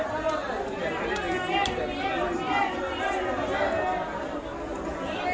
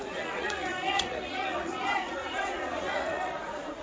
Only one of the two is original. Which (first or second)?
first